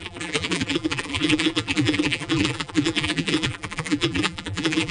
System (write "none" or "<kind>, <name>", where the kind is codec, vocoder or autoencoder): vocoder, BigVGAN v2